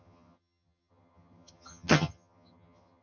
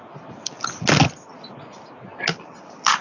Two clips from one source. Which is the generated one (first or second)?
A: first